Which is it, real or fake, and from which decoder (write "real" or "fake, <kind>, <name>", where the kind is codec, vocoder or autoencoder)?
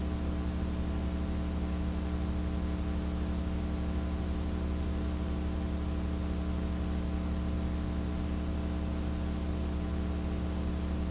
real